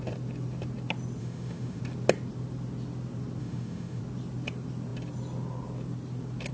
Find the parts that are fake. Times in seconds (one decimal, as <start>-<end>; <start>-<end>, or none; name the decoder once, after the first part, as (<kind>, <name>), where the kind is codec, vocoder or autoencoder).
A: 1.2-1.8 (autoencoder, DAC-VAE); 3.4-4.0

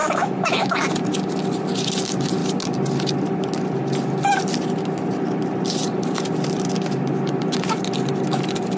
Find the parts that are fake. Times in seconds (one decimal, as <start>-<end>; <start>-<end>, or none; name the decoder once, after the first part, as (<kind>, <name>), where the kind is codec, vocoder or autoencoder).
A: 0.0-0.9 (autoencoder, DAC-VAE)

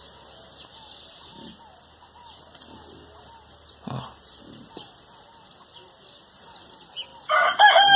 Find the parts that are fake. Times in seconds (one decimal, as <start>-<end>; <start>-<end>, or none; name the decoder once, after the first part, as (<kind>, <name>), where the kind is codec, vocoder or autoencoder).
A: none

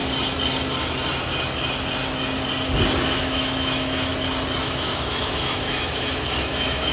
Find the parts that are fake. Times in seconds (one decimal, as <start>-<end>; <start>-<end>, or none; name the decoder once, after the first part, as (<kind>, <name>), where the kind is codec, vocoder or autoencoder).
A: 3.2-4.1 (autoencoder, DAC-VAE); 4.6-6.9

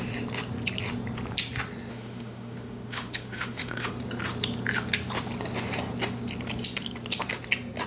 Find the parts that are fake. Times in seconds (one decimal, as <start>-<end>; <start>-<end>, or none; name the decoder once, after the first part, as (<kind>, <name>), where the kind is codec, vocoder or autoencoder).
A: 1.9-3.9 (autoencoder, DAC-VAE)

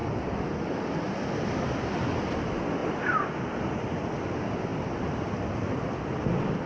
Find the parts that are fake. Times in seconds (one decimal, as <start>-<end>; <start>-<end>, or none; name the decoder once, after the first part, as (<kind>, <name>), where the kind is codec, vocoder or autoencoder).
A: none

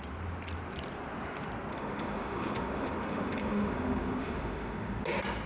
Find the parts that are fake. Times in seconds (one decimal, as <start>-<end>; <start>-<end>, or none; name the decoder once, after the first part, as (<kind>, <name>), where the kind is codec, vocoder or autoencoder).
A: 1.7-5.0 (autoencoder, DAC-VAE)